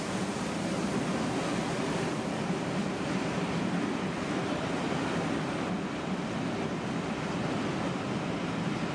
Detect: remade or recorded recorded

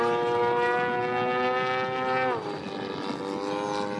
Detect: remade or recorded recorded